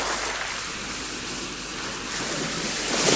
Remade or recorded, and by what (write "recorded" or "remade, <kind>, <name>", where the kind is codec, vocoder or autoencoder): recorded